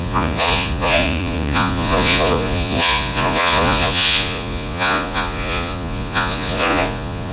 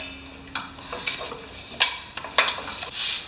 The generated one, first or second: first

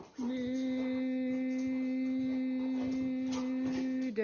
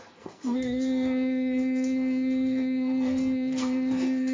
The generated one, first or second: second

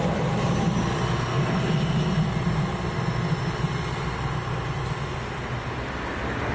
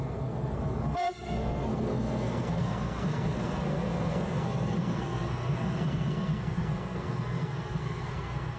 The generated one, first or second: second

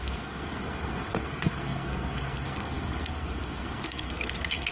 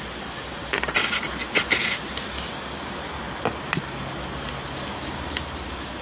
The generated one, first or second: first